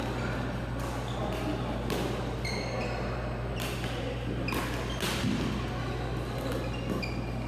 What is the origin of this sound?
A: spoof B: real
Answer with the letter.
B